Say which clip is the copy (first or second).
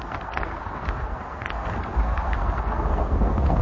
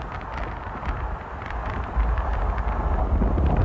first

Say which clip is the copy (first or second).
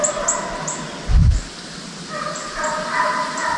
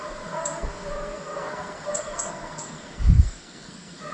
second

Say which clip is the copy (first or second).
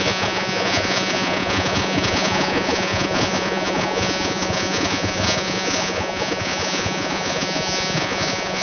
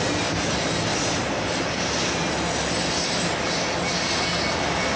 first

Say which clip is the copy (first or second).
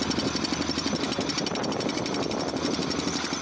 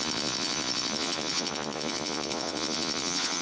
second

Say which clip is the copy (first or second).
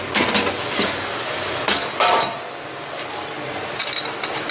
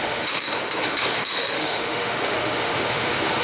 second